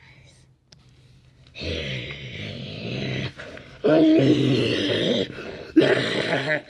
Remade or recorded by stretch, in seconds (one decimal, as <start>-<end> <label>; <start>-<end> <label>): 0.0-6.7 recorded